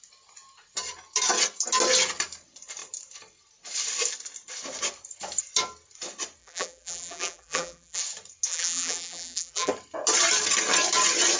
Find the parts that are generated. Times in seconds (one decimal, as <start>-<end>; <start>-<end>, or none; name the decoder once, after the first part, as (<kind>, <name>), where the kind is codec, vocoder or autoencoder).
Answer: 6.4-8.0 (vocoder, BigVGAN v2); 8.5-9.7